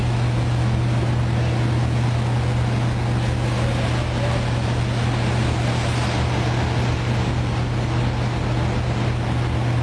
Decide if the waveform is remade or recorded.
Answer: recorded